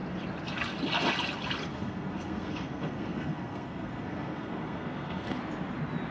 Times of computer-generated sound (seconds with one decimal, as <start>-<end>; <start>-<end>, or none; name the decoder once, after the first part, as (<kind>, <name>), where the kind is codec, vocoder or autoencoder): 1.7-5.4 (codec, SNAC)